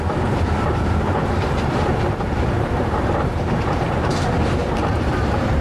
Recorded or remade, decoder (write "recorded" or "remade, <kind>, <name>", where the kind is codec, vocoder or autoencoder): remade, vocoder, BigVGAN v2